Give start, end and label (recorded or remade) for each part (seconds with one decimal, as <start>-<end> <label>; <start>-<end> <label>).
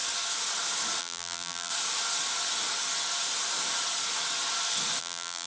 0.0-1.0 recorded; 1.0-1.7 remade; 1.7-5.0 recorded; 5.0-5.5 remade